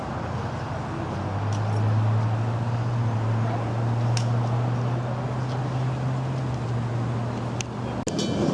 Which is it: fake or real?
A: real